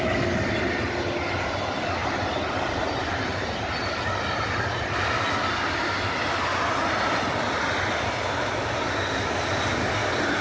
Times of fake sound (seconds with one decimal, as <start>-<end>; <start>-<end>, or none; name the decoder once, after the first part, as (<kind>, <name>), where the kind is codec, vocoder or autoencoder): none